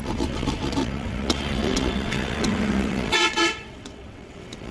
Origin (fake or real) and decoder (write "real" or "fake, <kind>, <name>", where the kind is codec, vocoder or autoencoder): fake, vocoder, WaveNeXt